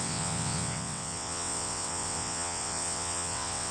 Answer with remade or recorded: remade